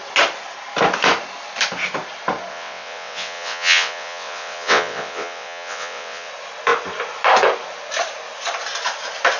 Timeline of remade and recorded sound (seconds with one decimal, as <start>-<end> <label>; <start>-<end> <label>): 0.0-2.5 recorded; 2.5-6.3 remade; 6.3-9.4 recorded